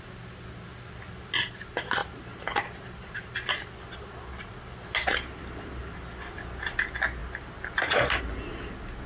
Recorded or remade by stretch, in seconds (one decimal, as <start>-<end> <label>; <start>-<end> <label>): 0.0-7.2 recorded; 7.2-8.2 remade; 8.2-9.1 recorded